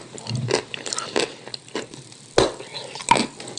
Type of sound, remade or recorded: recorded